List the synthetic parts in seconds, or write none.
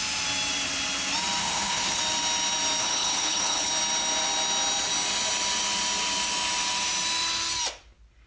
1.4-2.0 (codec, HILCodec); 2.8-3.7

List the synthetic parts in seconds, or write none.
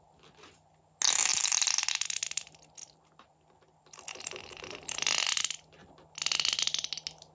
2.8-5.1 (vocoder, BigVGAN v2)